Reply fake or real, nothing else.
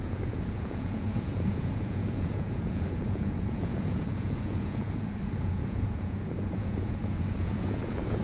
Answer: fake